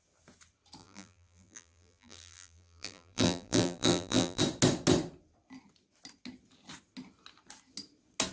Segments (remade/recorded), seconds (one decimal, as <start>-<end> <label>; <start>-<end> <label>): 0.0-0.8 recorded; 0.8-4.4 remade; 4.4-8.3 recorded